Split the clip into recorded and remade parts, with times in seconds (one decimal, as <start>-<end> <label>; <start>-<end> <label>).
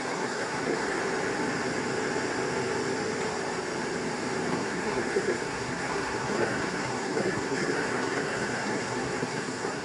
0.0-1.0 remade; 1.0-4.5 recorded; 4.5-9.8 remade